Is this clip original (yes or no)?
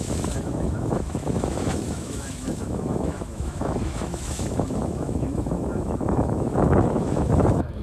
no